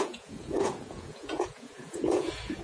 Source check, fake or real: fake